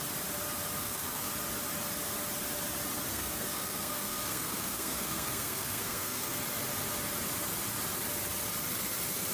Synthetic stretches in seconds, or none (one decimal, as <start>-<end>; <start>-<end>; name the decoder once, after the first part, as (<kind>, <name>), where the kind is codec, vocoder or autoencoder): 0.8-1.3 (codec, SNAC); 3.1-6.4